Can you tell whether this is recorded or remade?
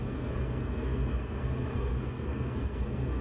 remade